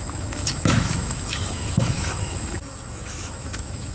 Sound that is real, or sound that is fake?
fake